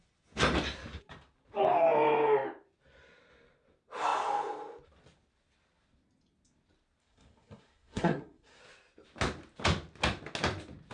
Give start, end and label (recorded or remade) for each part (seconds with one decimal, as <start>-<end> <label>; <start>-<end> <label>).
0.0-7.0 recorded; 7.0-8.6 remade; 8.6-10.9 recorded